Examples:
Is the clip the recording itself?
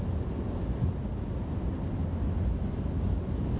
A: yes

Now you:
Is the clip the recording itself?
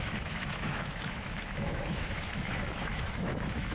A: no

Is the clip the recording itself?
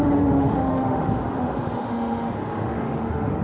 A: no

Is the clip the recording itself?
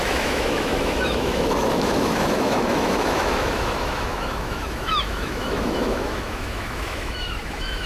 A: no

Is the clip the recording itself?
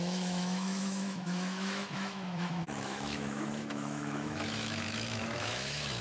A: no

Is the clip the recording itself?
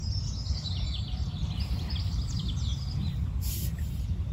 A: yes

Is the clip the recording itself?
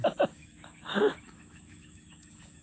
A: no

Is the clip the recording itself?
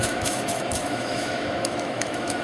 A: no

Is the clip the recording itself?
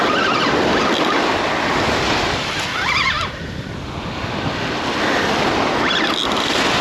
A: yes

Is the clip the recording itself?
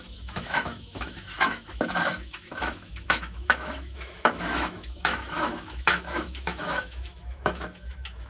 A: no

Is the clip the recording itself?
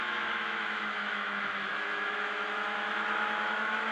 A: no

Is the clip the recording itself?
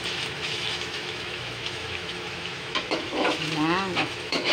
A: no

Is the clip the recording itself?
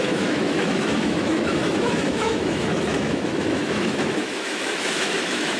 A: no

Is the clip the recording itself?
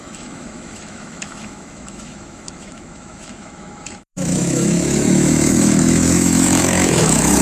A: no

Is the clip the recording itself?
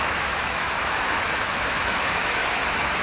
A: no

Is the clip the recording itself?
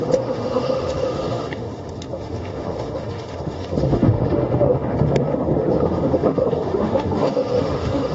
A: no